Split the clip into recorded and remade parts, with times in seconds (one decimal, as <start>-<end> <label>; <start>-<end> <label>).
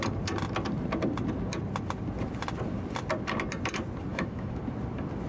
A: 0.0-4.1 recorded; 4.1-4.6 remade; 4.6-5.3 recorded